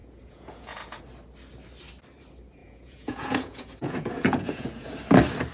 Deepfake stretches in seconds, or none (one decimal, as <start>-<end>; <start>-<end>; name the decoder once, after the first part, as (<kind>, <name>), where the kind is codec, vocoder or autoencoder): 0.0-1.0 (vocoder, Vocos); 2.6-4.9